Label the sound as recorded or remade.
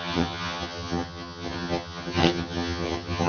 remade